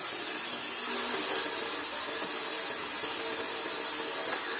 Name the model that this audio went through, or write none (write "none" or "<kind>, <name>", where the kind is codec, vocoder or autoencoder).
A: none